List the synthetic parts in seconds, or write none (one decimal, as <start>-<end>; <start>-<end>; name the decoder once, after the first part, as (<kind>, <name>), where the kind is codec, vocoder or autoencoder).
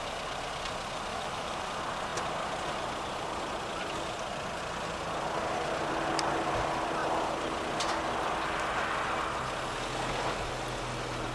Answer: 1.1-1.6 (autoencoder, DAC-VAE)